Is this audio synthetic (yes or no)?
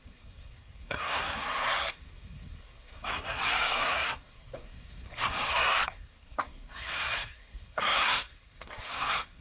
yes